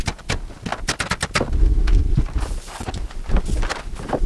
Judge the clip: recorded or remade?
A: recorded